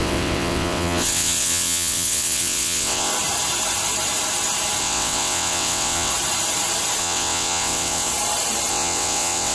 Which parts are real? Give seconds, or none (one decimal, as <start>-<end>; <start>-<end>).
3.1-4.8; 6.1-7.0; 8.1-8.7